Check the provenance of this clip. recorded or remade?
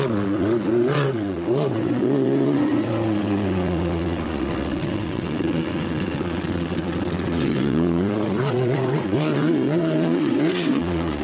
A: remade